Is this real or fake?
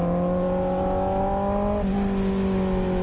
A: real